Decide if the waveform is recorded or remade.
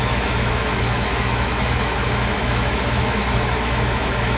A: remade